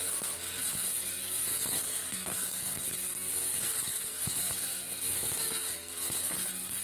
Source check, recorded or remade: remade